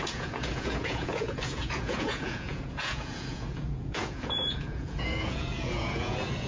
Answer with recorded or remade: remade